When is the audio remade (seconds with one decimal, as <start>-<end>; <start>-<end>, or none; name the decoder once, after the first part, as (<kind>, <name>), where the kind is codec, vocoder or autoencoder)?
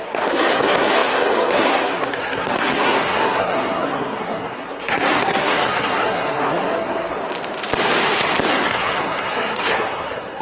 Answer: 0.0-7.2 (codec, SNAC); 8.5-10.4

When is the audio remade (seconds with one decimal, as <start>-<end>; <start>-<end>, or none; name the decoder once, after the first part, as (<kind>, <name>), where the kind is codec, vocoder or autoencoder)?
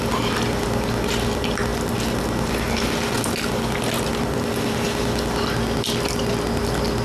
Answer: none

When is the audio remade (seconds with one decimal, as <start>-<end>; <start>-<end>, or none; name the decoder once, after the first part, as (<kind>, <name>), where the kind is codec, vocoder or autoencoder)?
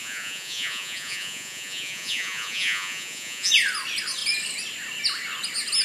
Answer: 0.0-3.5 (vocoder, Vocos)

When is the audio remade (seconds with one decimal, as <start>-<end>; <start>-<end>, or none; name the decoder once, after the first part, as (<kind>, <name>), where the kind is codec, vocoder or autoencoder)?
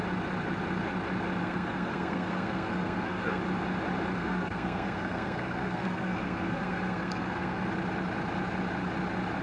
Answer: 1.4-3.4 (codec, SNAC); 4.2-7.7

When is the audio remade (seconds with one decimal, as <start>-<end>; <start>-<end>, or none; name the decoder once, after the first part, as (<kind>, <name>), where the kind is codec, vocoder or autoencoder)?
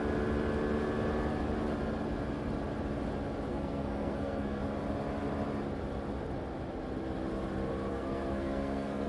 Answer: 3.5-4.6 (codec, SNAC); 7.9-9.1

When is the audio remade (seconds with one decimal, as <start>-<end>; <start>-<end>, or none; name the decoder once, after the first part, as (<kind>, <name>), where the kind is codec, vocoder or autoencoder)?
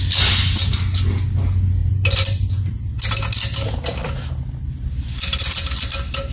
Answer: 1.8-2.4 (vocoder, BigVGAN v2)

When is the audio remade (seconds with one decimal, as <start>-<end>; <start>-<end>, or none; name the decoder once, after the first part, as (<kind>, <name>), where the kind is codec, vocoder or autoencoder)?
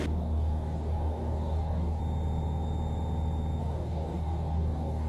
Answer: 0.0-2.0 (codec, DAC); 3.6-5.1